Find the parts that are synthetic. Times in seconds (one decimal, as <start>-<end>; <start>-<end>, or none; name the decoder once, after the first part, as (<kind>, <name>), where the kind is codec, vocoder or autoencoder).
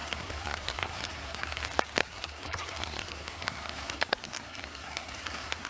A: 0.0-1.6 (codec, SNAC); 2.0-5.7